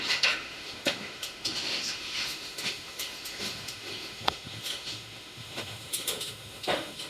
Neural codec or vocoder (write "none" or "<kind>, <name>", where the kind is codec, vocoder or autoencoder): autoencoder, DAC-VAE